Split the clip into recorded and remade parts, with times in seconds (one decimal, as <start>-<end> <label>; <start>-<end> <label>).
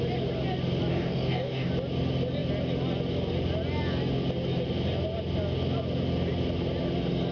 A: 0.0-0.9 recorded; 0.9-1.7 remade; 1.7-7.3 recorded